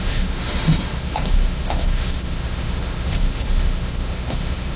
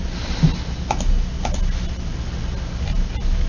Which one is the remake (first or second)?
first